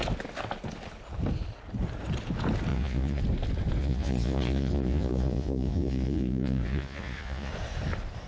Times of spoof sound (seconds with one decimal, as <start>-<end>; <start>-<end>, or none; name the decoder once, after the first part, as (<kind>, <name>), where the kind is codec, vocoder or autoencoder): 2.7-3.2 (vocoder, Vocos); 3.8-7.5